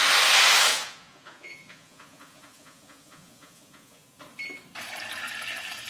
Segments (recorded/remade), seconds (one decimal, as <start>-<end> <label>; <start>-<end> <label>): 0.0-0.7 recorded; 0.7-4.2 remade; 4.2-5.9 recorded